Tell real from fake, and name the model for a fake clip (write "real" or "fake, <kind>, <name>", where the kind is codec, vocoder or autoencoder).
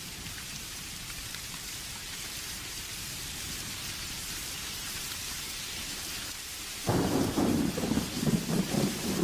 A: fake, vocoder, BigVGAN v2